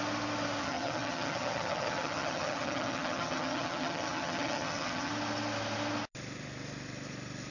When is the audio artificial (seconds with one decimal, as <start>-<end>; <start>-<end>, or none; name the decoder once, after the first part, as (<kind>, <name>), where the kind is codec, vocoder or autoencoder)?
0.6-5.1 (vocoder, HiFi-GAN)